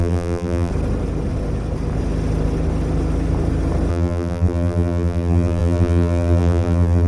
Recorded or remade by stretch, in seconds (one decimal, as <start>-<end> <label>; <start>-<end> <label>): 0.0-0.7 remade; 0.7-3.9 recorded; 3.9-7.1 remade